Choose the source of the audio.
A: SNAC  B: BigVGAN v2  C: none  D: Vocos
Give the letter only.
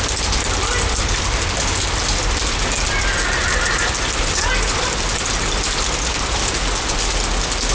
C